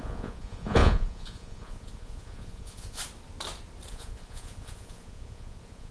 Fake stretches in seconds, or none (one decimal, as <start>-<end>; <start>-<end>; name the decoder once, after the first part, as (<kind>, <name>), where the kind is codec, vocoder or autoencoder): 0.0-3.0 (vocoder, Vocos); 3.9-5.9